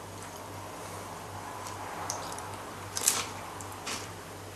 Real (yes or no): no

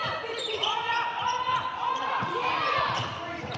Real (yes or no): yes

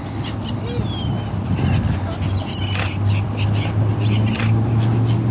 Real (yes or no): yes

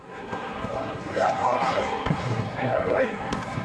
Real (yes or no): no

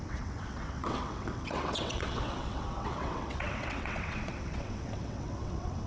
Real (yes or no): no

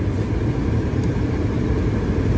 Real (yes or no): yes